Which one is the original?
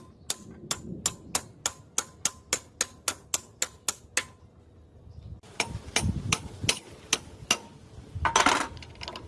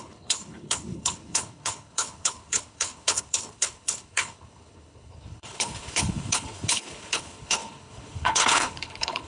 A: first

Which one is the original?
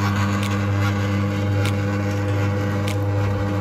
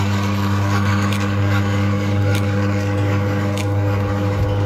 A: first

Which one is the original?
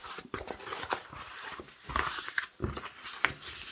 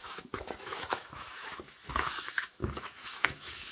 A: first